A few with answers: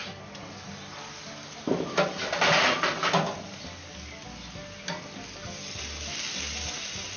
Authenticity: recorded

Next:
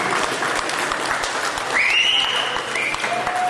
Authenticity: recorded